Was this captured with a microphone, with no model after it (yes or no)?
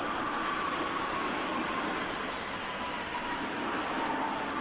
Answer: yes